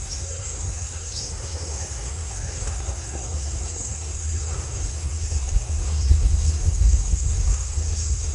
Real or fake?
fake